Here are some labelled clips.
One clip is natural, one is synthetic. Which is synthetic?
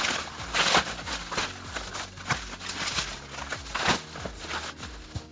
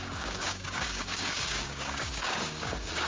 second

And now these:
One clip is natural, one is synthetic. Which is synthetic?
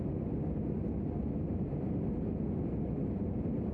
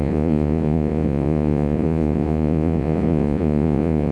second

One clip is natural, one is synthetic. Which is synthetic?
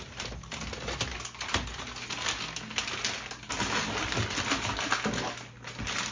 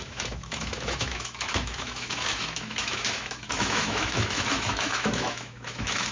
second